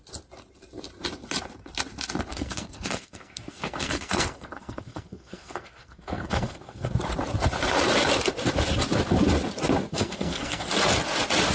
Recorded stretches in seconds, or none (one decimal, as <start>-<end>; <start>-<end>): 0.0-2.3; 6.9-9.9; 10.7-11.5